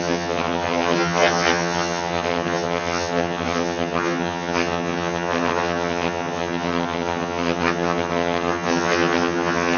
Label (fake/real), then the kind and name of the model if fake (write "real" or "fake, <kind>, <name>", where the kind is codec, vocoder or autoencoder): fake, vocoder, HiFi-GAN